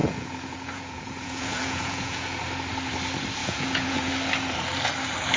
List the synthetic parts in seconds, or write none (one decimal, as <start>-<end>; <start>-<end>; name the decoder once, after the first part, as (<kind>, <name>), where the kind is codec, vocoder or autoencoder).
0.0-2.4 (vocoder, Vocos); 3.4-4.1

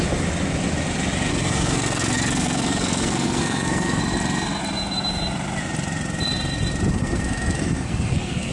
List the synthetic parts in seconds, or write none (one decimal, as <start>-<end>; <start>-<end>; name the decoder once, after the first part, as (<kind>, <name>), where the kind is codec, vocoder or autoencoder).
1.3-4.0 (codec, SNAC); 6.9-8.5

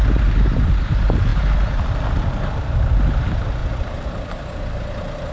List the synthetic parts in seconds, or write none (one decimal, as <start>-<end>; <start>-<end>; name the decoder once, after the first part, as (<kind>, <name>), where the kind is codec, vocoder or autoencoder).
none

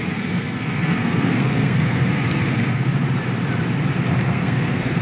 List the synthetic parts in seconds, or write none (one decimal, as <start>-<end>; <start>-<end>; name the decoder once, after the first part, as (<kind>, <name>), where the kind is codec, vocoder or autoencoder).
0.0-2.9 (codec, SNAC); 4.1-5.0

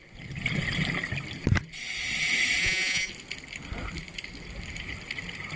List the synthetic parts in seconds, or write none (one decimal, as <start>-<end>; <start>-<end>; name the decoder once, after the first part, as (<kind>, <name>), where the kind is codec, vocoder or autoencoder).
2.6-3.1 (vocoder, Vocos)